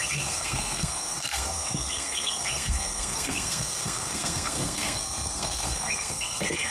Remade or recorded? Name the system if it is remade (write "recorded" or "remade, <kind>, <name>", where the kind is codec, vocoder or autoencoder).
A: remade, codec, SNAC